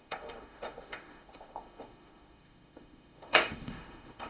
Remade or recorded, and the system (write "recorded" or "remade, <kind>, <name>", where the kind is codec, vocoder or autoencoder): remade, autoencoder, DAC-VAE